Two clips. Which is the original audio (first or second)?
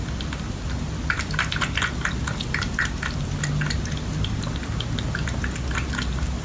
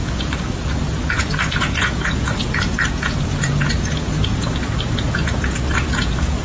first